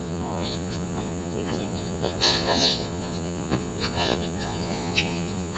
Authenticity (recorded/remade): remade